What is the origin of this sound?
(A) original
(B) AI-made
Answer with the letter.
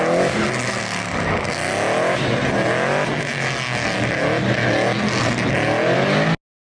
A